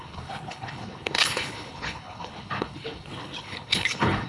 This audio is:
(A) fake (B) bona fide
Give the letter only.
A